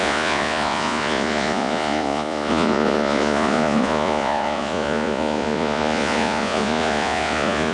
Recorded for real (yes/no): no